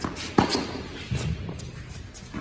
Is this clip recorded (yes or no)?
yes